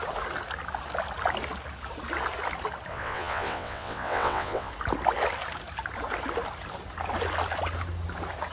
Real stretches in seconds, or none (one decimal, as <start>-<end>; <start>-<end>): 0.0-2.9; 4.7-8.5